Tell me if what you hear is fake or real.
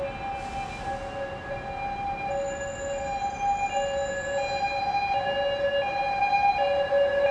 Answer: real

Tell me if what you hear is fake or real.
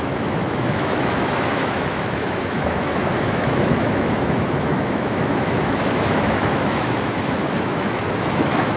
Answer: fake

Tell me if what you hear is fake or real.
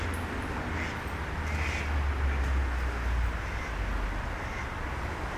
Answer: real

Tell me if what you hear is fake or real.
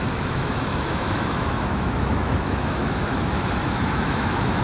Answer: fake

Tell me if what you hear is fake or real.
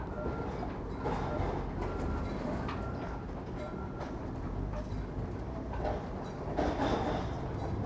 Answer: real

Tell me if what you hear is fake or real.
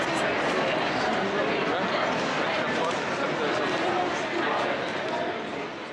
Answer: real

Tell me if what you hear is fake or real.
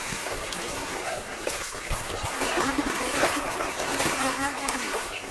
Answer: fake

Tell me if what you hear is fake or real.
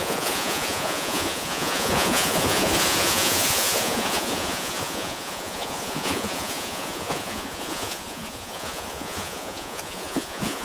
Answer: fake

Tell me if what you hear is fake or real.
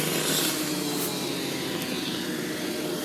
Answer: real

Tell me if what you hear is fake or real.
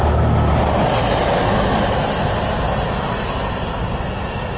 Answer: real